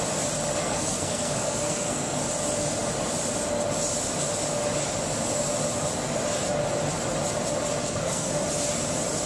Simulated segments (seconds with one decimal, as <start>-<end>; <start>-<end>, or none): 0.6-2.2; 7.8-8.3